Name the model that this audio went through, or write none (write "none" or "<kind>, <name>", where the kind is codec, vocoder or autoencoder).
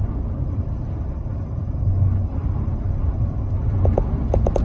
none